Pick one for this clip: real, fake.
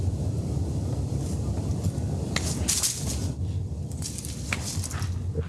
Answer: real